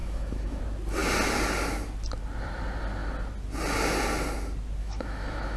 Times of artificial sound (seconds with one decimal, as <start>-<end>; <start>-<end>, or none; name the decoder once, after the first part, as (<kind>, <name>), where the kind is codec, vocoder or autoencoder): 0.0-0.6 (autoencoder, DAC-VAE); 4.8-5.6